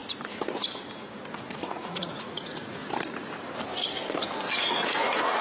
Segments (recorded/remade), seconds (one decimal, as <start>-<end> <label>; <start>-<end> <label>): 0.0-1.5 recorded; 1.5-2.8 remade; 2.8-4.6 recorded; 4.6-5.4 remade